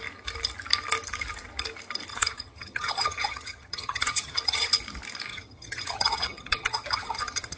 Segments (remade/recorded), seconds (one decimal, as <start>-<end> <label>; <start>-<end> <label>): 0.0-2.1 recorded; 2.1-4.7 remade; 4.7-5.3 recorded; 5.3-7.6 remade